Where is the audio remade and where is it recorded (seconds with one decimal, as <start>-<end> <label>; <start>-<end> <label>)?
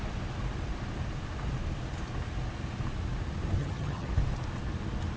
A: 0.0-3.6 recorded; 3.6-4.1 remade; 4.1-5.2 recorded